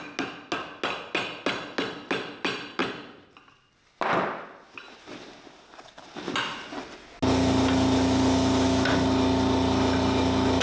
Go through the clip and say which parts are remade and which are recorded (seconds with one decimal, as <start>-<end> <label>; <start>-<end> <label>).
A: 0.0-10.6 recorded